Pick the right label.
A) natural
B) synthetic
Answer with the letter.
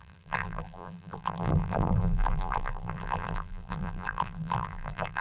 B